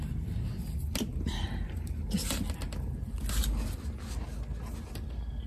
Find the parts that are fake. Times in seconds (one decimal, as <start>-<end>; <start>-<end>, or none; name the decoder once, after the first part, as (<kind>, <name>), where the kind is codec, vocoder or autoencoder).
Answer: 1.1-2.0 (vocoder, BigVGAN v2)